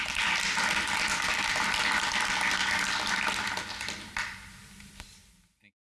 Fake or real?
real